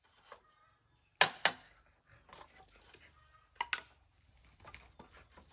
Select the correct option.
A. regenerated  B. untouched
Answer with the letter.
B